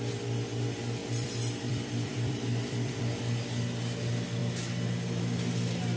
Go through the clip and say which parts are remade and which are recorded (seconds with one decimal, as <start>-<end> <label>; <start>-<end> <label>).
0.0-1.0 recorded; 1.0-3.0 remade; 3.0-6.0 recorded